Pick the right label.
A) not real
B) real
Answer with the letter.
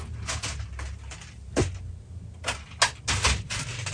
B